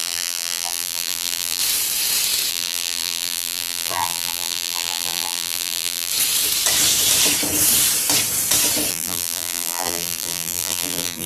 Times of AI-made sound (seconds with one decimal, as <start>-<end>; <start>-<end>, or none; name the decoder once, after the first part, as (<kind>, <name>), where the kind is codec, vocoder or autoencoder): 0.0-1.6 (vocoder, BigVGAN v2); 2.5-6.1; 8.9-11.3